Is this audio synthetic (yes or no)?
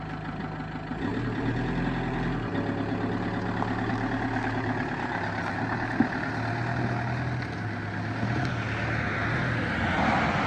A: no